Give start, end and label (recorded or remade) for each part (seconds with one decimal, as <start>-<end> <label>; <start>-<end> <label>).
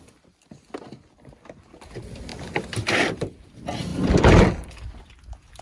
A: 0.0-2.3 recorded; 2.3-3.5 remade; 3.5-3.9 recorded; 3.9-5.0 remade; 5.0-5.6 recorded